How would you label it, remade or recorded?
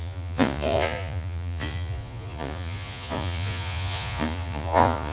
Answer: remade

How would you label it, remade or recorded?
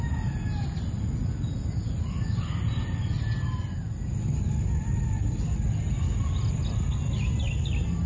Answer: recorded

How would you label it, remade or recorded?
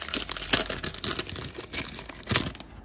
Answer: recorded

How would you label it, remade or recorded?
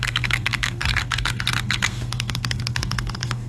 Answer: remade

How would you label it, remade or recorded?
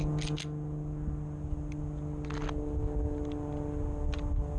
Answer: recorded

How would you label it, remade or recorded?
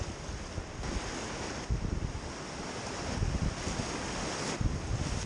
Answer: recorded